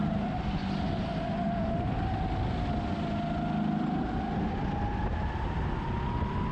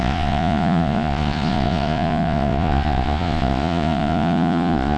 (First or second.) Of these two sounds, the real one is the first